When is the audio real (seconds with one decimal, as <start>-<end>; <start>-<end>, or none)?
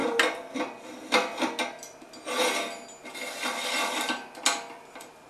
0.0-5.3